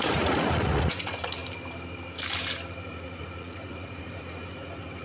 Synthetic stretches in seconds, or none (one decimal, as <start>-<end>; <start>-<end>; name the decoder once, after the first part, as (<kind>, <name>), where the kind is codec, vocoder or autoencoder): 0.0-1.4 (vocoder, Vocos); 2.9-5.0